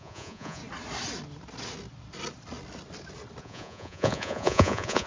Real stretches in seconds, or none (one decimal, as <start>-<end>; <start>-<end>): 0.6-3.4